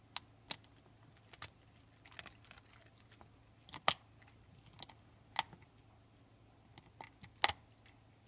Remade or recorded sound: recorded